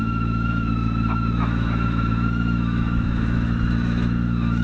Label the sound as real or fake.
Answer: fake